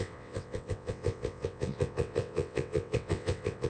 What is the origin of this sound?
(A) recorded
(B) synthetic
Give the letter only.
B